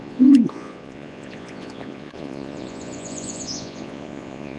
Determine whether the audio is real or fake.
fake